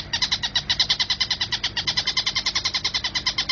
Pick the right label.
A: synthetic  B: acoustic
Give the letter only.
A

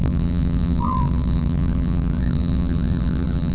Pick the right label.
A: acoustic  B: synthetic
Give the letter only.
B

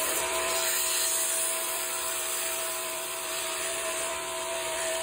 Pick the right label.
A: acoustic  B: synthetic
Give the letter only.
B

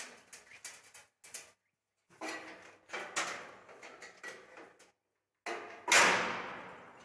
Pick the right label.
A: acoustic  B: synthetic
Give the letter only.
A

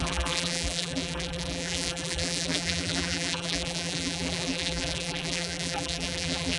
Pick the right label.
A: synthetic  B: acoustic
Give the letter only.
A